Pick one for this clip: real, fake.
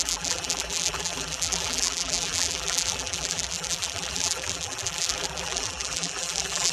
fake